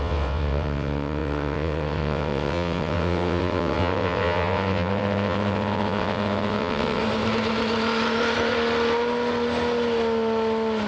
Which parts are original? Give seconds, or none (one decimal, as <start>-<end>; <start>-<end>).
7.0-10.9